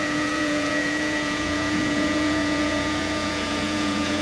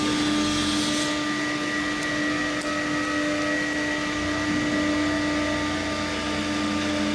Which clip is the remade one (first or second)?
first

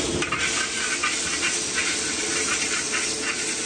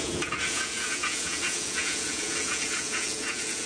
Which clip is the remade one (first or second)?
second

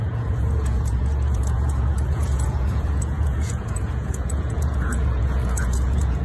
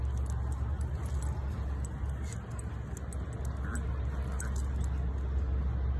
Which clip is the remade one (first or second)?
first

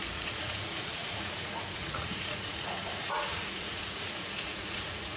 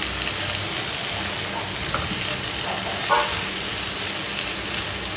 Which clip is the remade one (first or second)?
first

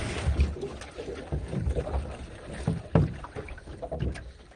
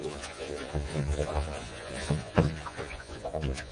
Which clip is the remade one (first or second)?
second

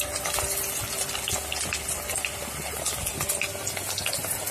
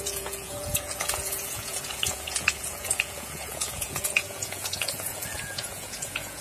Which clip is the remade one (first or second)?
second